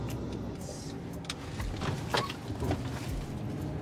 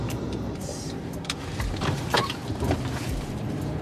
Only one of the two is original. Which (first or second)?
first